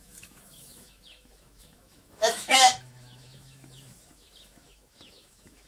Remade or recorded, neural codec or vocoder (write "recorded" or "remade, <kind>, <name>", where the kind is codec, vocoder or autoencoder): remade, autoencoder, DAC-VAE